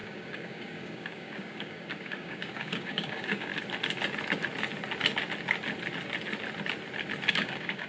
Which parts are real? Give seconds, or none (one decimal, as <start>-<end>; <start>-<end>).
3.5-7.3